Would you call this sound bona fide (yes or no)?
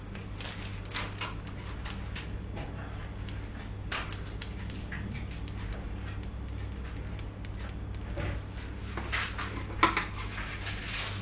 yes